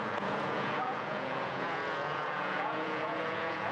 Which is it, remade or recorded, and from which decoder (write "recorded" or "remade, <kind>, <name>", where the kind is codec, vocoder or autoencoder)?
remade, vocoder, Vocos